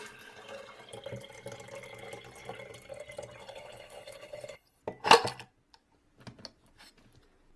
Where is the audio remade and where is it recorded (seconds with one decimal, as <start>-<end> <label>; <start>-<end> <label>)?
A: 0.0-3.4 recorded; 3.4-4.8 remade; 4.8-7.6 recorded